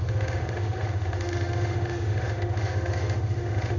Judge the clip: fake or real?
fake